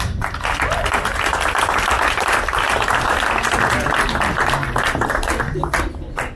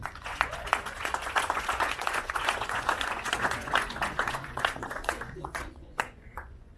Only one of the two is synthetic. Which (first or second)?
second